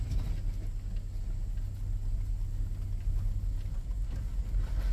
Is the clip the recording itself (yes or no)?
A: yes